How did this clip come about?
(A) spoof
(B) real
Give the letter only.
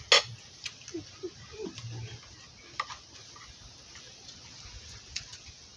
B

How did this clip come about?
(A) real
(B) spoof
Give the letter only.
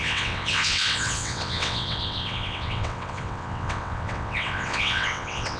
B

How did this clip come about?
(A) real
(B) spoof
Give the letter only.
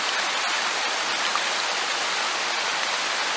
A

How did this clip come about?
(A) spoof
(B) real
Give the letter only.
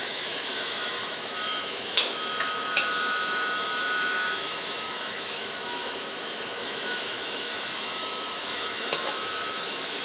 A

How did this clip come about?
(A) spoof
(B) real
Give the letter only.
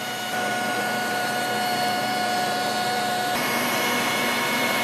A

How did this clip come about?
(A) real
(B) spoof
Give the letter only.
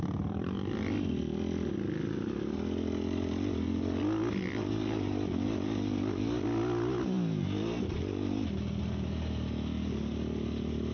A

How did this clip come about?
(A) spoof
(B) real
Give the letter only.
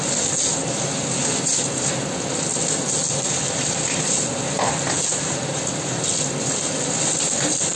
B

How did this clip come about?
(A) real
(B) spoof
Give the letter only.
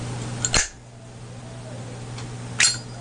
A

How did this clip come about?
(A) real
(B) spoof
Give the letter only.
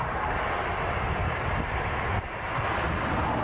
A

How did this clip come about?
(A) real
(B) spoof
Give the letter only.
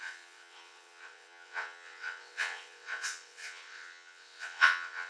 B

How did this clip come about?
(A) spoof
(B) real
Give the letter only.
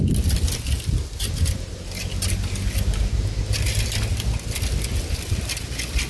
B